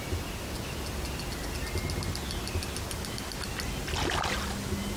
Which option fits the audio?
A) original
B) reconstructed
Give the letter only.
A